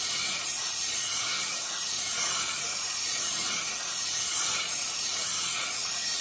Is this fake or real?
fake